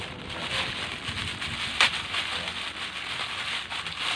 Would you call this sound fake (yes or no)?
no